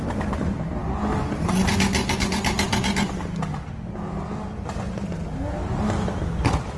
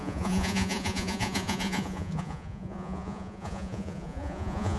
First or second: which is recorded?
first